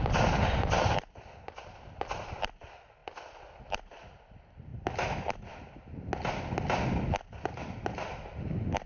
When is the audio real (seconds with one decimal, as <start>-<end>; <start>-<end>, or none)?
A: 0.0-8.9